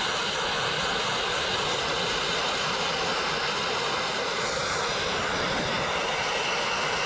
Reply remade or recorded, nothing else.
recorded